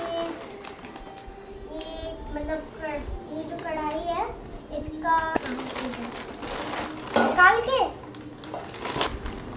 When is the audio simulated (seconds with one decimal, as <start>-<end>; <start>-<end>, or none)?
none